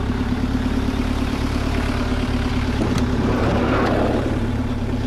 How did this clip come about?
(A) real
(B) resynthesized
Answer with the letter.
B